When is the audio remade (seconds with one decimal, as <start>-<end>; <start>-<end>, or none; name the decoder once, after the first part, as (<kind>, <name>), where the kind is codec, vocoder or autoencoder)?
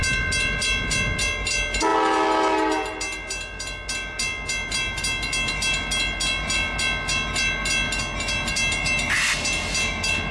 none